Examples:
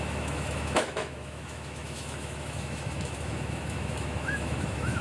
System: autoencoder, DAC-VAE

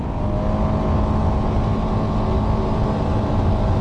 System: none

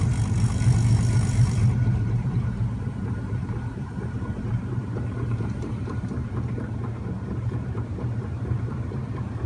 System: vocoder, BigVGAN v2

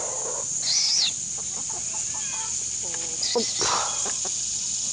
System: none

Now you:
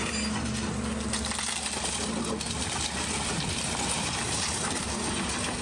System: none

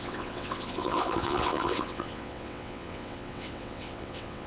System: vocoder, WaveNeXt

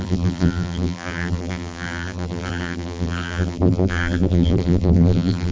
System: vocoder, BigVGAN v2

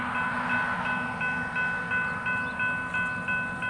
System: none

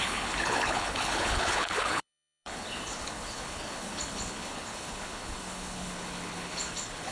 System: codec, HILCodec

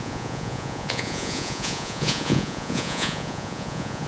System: vocoder, Vocos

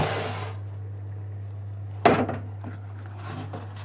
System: none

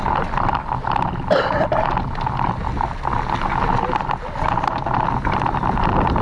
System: none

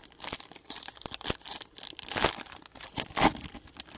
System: none